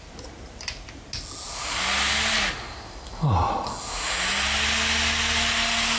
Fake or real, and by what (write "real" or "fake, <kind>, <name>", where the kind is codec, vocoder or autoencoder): real